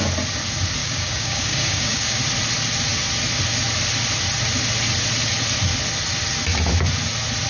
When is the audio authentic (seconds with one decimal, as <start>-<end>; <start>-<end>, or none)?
0.0-0.8; 2.2-7.5